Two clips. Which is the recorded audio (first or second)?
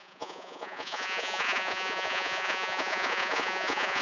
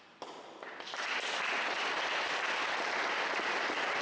second